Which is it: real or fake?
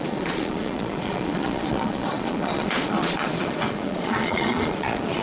fake